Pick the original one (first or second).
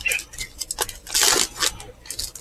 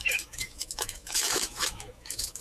first